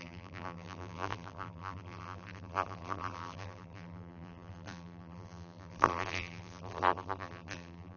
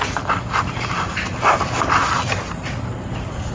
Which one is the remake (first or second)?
first